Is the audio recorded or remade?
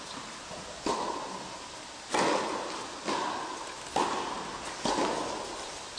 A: recorded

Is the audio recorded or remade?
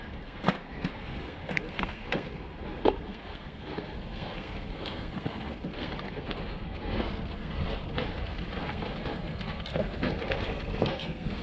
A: remade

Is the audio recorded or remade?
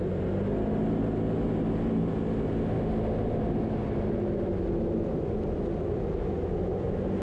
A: recorded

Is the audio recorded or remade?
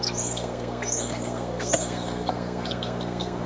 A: remade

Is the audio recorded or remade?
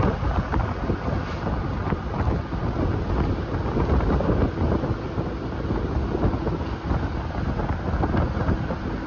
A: recorded